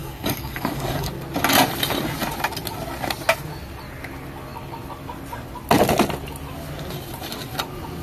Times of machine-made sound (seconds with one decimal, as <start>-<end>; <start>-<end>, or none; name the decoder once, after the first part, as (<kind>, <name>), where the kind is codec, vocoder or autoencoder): 0.0-1.1 (codec, DAC)